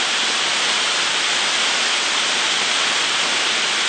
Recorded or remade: recorded